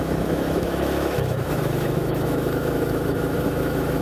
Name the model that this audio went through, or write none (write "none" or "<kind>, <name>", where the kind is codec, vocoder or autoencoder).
autoencoder, DAC-VAE